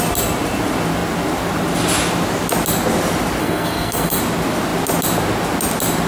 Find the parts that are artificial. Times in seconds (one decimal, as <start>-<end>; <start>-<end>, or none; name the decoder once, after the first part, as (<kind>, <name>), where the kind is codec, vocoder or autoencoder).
3.4-4.2 (codec, SNAC)